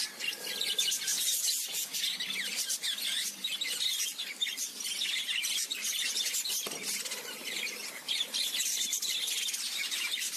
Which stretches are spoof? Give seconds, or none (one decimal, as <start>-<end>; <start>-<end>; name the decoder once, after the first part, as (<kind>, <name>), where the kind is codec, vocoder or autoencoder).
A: 0.0-1.1 (vocoder, BigVGAN v2); 4.6-10.4